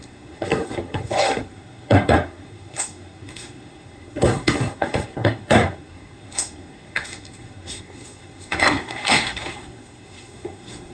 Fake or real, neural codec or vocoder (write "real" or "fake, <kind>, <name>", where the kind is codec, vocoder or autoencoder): fake, codec, SNAC